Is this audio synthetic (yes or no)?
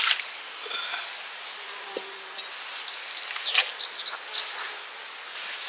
no